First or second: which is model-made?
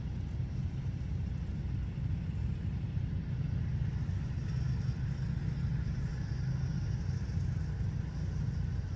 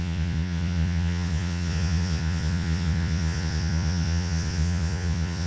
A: second